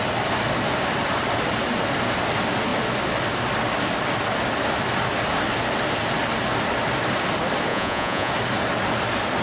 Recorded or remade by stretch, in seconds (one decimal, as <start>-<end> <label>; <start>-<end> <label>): 0.0-7.7 recorded; 7.7-8.3 remade; 8.3-9.4 recorded